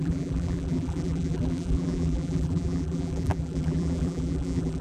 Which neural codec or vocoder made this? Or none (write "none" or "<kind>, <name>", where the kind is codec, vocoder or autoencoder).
vocoder, BigVGAN v2